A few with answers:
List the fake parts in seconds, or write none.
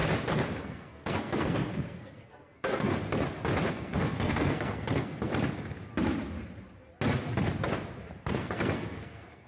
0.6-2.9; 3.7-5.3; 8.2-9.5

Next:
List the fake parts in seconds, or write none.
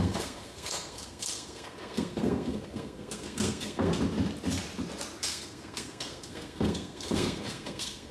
0.0-3.9; 5.2-8.1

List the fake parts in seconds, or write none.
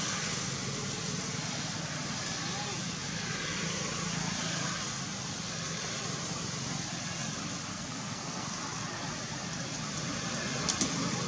7.7-8.6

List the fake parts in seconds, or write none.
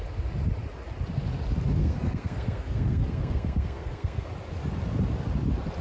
1.8-4.3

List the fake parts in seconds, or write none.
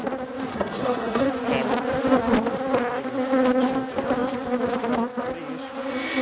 0.5-1.3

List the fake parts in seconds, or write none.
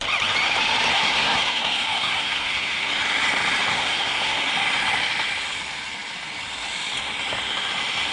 0.9-2.9; 3.7-4.5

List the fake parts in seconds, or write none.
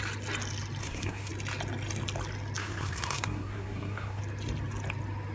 0.8-1.3; 2.6-4.2